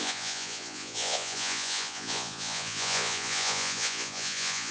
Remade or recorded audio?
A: remade